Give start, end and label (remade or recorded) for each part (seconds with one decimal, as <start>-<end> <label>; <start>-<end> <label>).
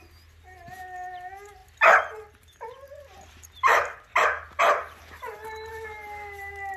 0.0-6.8 recorded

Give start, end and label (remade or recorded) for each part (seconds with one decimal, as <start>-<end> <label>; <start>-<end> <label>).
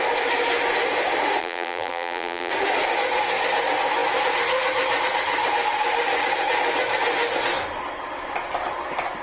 0.0-1.4 recorded; 1.4-2.5 remade; 2.5-9.2 recorded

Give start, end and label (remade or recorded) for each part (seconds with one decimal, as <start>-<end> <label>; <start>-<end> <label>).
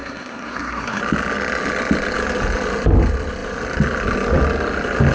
0.0-1.0 remade; 1.0-5.1 recorded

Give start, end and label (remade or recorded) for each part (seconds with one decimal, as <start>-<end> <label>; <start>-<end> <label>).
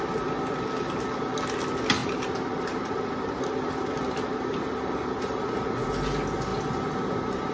0.0-2.0 recorded; 2.0-5.4 remade; 5.4-7.5 recorded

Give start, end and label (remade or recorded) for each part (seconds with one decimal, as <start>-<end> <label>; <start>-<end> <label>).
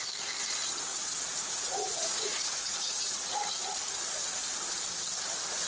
0.0-0.9 recorded; 0.9-3.3 remade; 3.3-5.7 recorded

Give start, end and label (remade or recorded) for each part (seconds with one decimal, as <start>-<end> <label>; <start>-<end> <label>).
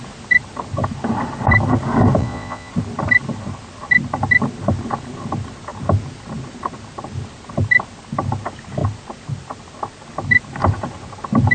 0.0-2.2 recorded; 2.2-2.7 remade; 2.7-11.5 recorded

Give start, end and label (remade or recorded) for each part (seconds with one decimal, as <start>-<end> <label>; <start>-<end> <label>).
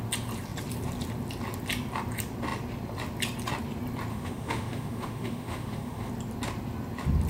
0.0-4.1 recorded; 4.1-6.1 remade; 6.1-7.3 recorded